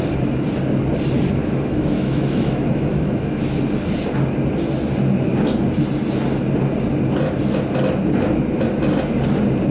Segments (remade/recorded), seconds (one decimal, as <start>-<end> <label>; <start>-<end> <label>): 0.0-1.4 recorded; 1.4-3.6 remade; 3.6-9.7 recorded